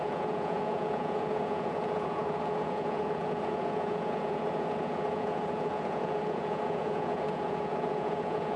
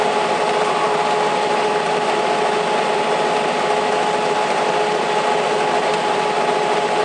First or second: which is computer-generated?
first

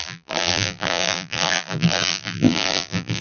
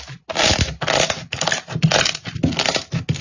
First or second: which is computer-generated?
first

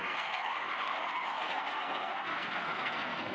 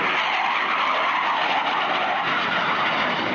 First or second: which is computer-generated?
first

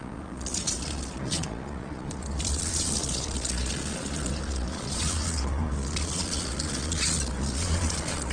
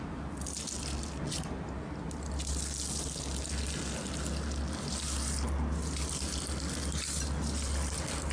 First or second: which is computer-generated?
first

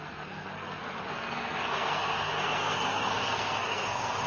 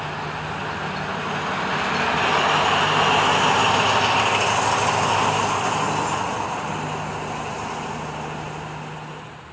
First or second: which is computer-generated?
first